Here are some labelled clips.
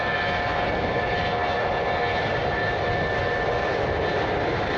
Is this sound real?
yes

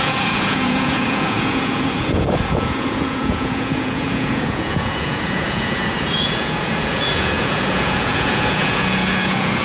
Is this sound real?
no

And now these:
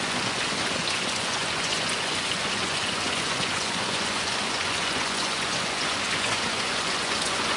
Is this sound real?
no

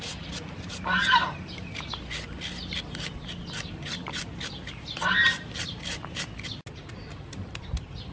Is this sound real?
yes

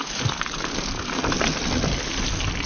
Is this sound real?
yes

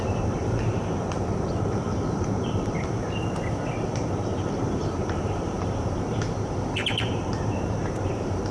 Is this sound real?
no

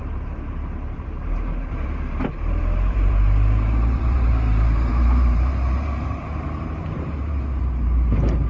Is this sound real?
no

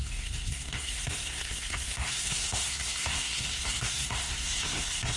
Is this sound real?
no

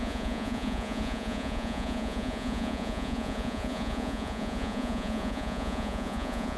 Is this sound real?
no